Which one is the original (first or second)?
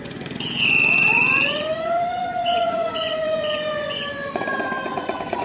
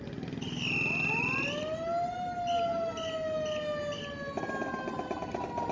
second